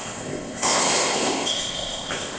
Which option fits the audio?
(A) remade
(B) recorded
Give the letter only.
A